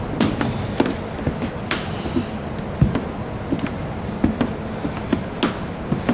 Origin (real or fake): real